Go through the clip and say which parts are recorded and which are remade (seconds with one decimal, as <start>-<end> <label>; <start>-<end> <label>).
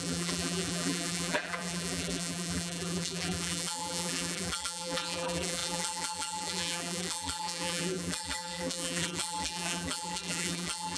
0.0-11.0 remade